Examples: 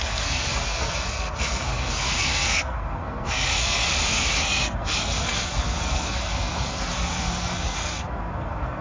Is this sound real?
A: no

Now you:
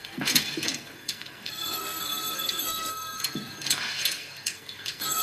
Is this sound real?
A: no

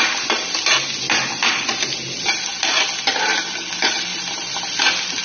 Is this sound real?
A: yes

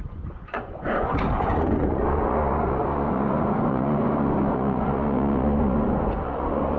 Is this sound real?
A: no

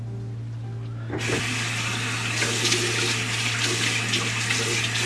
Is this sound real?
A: yes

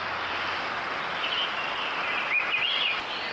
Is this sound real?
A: yes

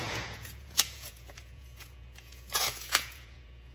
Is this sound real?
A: no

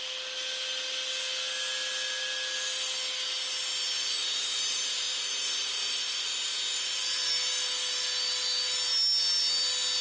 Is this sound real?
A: yes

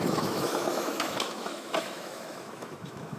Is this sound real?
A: no